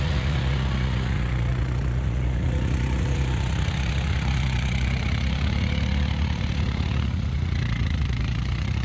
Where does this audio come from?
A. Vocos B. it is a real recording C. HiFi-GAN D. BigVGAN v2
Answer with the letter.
A